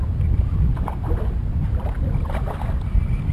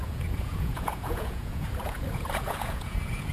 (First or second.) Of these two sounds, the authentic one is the first